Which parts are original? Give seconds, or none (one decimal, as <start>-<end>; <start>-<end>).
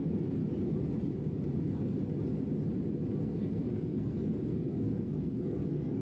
0.4-1.6; 2.0-3.2